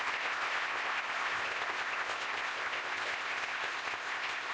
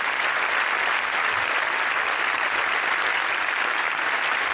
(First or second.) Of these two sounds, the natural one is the second